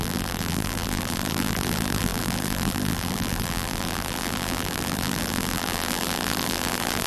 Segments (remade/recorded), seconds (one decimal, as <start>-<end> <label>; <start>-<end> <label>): 0.0-7.1 remade

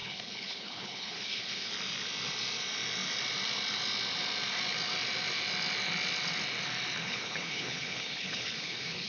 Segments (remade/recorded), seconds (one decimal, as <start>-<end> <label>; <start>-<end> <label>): 0.0-1.7 remade; 1.7-7.0 recorded; 7.0-9.1 remade

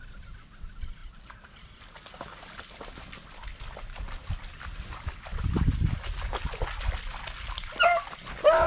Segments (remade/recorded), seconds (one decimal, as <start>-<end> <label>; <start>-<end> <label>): 0.0-4.2 recorded; 4.2-5.6 remade; 5.6-8.7 recorded

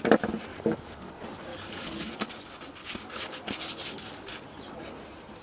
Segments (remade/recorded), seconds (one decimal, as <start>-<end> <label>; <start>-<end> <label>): 0.0-0.5 recorded; 0.5-1.1 remade; 1.1-1.5 recorded; 1.5-2.1 remade; 2.1-2.8 recorded; 2.8-3.5 remade; 3.5-5.4 recorded